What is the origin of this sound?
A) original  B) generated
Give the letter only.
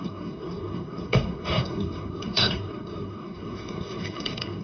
B